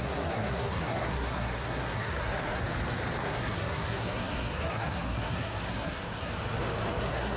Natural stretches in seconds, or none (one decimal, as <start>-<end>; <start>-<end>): 2.6-3.2; 6.3-7.0